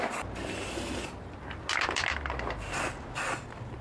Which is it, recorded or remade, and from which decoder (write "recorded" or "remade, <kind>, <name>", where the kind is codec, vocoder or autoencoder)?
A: recorded